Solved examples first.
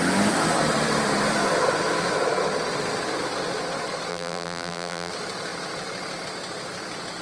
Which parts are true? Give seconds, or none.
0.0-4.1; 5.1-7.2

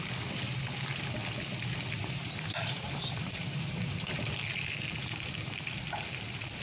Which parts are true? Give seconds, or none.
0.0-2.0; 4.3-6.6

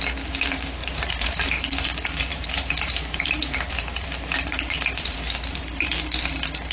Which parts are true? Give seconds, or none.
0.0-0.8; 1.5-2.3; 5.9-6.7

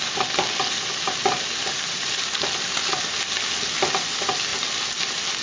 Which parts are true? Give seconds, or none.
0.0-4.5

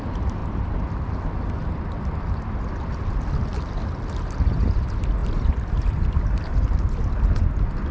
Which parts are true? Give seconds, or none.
0.0-7.9